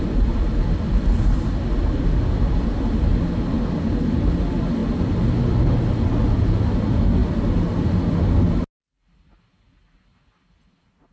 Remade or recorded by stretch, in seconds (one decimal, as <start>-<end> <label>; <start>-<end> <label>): 0.0-11.1 recorded